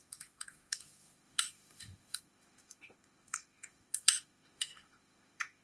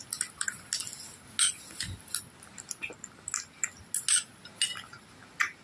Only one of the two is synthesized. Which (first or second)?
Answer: first